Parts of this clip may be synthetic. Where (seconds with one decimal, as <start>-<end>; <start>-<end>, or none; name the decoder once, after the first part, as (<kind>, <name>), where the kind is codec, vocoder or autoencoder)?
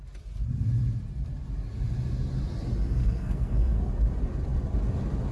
3.0-3.9 (codec, SNAC)